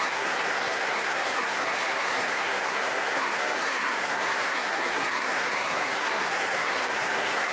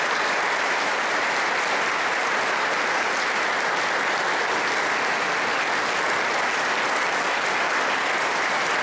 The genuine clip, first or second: second